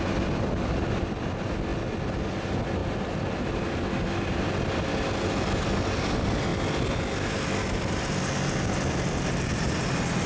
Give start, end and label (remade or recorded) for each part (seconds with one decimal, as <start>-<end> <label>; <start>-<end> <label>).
0.0-10.3 recorded

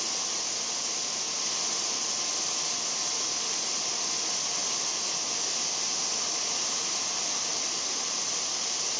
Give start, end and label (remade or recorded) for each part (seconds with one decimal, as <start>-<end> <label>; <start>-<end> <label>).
0.0-9.0 recorded

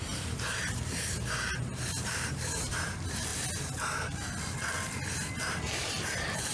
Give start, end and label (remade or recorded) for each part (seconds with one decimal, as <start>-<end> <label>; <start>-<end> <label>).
0.0-3.3 remade; 3.3-5.5 recorded; 5.5-6.5 remade

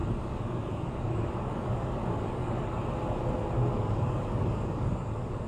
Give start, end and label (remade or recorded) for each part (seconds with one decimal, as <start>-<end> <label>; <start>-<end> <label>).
0.0-2.8 remade; 2.8-3.7 recorded; 3.7-5.5 remade

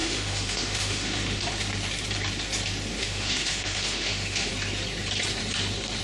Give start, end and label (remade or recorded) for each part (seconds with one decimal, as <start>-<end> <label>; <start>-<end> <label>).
0.0-1.4 remade; 1.4-3.0 recorded; 3.0-4.5 remade; 4.5-6.0 recorded

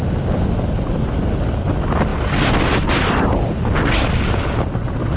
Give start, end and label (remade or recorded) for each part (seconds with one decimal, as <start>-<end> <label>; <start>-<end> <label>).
0.0-5.2 recorded

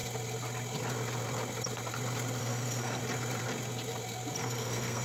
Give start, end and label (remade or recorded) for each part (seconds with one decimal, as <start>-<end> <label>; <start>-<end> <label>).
0.0-2.4 recorded; 2.4-3.0 remade; 3.0-4.4 recorded; 4.4-5.0 remade